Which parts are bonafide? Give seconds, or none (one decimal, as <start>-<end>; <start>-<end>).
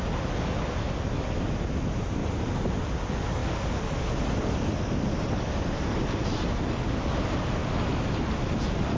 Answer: 0.0-9.0